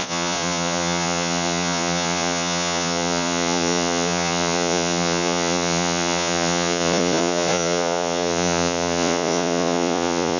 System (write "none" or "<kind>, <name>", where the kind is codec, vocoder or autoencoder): vocoder, Vocos